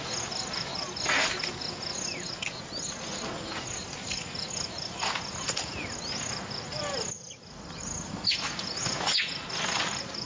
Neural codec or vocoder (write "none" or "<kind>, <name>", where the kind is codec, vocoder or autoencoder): none